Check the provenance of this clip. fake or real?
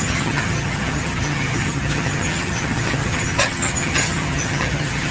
fake